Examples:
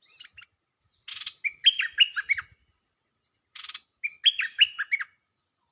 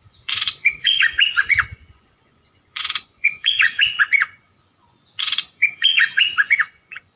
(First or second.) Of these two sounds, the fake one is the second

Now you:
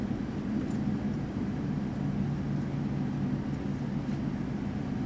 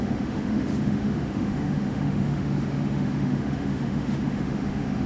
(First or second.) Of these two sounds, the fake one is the second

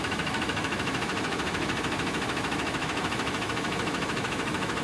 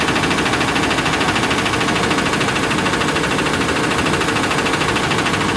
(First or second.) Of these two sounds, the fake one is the first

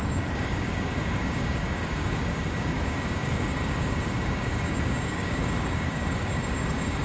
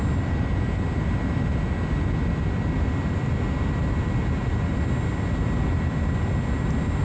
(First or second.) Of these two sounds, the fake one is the first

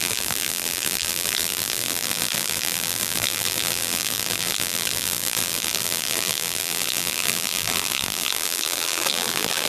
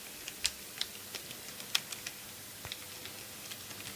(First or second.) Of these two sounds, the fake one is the first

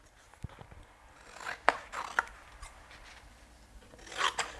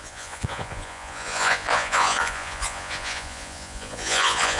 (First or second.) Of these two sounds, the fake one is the second